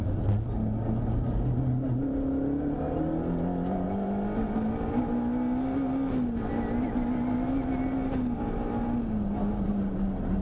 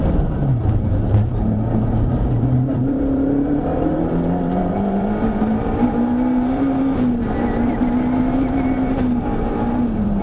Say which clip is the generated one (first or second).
second